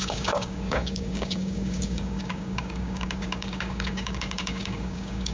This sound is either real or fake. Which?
fake